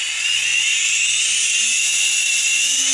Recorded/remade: recorded